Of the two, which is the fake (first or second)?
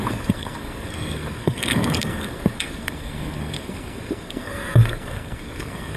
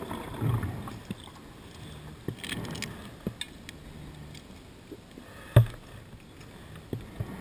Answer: first